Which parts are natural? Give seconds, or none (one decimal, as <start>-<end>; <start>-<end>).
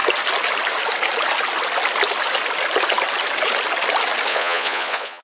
0.0-4.3